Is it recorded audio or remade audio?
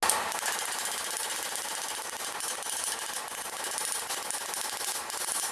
recorded